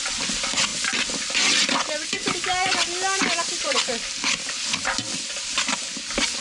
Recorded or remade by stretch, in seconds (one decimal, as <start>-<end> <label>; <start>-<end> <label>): 0.0-6.4 recorded